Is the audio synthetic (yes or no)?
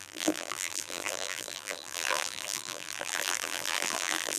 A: yes